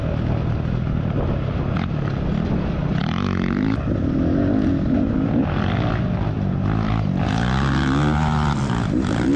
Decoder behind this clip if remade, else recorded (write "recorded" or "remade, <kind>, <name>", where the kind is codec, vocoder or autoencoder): recorded